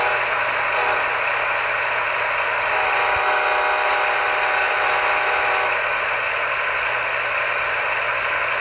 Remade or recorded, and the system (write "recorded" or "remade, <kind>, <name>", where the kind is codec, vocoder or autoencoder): recorded